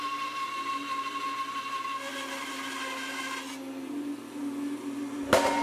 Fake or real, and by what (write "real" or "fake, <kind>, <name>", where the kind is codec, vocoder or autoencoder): real